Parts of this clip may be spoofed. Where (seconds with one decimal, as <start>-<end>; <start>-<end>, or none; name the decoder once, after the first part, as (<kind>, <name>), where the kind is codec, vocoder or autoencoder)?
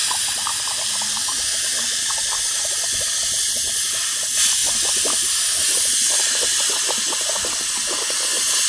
none